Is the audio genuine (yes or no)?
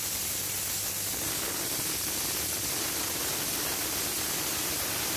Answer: yes